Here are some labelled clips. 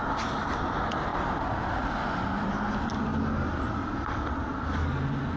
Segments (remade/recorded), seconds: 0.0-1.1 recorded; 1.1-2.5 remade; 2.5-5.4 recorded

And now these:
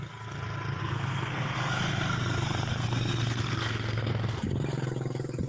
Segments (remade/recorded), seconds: 0.0-0.8 recorded; 0.8-4.1 remade; 4.1-5.5 recorded

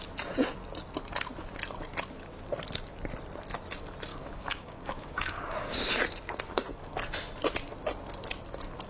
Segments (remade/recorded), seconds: 0.0-4.1 recorded; 4.1-5.9 remade; 5.9-8.9 recorded

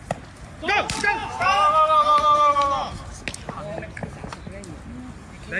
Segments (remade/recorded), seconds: 0.0-1.2 recorded; 1.2-2.2 remade; 2.2-5.6 recorded

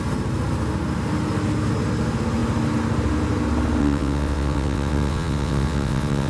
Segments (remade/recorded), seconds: 0.0-3.8 recorded; 3.8-6.3 remade

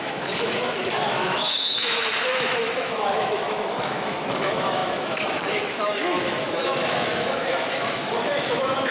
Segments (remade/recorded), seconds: 0.0-8.9 remade

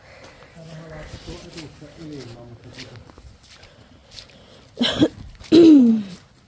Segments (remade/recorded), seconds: 0.0-6.5 recorded